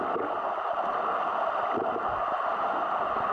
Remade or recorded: recorded